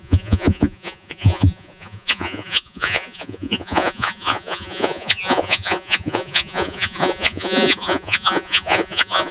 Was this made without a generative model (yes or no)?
no